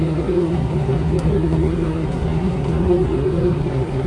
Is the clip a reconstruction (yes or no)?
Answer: yes